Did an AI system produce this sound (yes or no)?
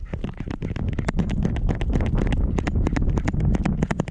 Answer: no